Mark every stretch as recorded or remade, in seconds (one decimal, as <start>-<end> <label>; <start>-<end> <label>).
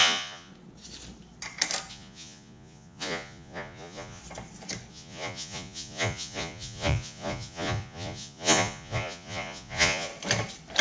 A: 0.0-0.5 remade; 0.5-1.9 recorded; 1.9-4.2 remade; 4.2-4.9 recorded; 4.9-10.1 remade; 10.1-10.8 recorded